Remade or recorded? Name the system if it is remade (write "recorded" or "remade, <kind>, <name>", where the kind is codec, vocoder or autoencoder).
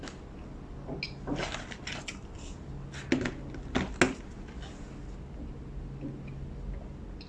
recorded